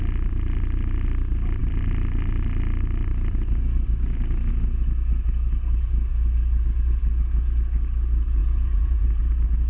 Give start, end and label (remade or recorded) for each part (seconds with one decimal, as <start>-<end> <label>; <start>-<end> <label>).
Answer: 0.0-8.4 recorded; 8.4-9.2 remade; 9.2-9.7 recorded